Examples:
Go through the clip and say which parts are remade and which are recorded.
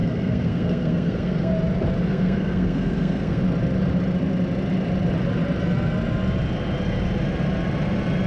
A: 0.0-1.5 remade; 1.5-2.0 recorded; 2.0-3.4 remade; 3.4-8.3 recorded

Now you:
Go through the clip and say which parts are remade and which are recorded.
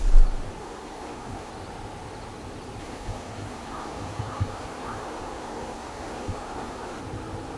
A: 0.0-0.6 recorded; 0.6-1.5 remade; 1.5-2.8 recorded; 2.8-7.0 remade; 7.0-7.6 recorded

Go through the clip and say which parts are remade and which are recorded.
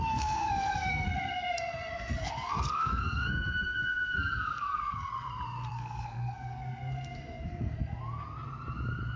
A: 0.0-5.1 remade; 5.1-5.7 recorded; 5.7-8.0 remade; 8.0-9.2 recorded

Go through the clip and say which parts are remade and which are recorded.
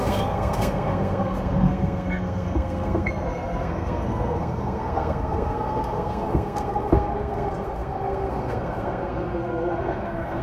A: 0.0-10.4 remade